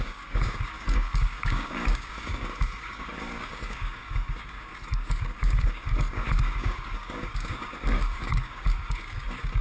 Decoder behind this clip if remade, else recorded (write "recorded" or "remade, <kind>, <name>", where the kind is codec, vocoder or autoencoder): remade, codec, DAC